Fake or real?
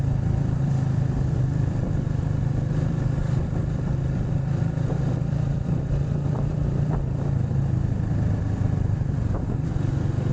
fake